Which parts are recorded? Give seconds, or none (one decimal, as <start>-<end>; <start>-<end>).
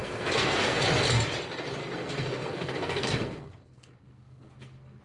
0.8-1.8